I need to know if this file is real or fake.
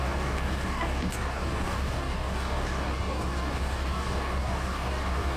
fake